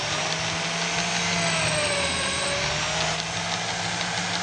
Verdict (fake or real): real